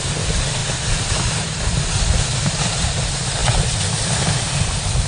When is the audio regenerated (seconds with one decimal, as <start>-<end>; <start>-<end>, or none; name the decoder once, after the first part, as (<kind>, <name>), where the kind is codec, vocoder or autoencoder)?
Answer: none